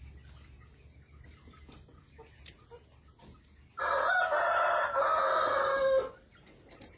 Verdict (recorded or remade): recorded